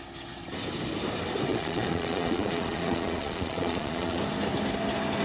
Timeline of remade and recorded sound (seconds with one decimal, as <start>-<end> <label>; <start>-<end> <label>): 0.0-1.5 recorded; 1.5-4.2 remade; 4.2-5.2 recorded